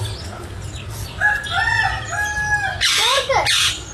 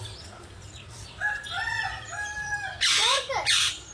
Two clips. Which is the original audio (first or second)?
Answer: first